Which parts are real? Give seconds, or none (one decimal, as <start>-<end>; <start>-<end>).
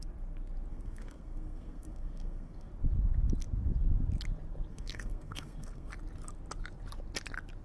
0.0-0.7; 2.7-4.7; 5.9-7.6